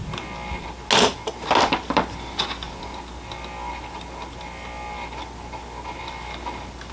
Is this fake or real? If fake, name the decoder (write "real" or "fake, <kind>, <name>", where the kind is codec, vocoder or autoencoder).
real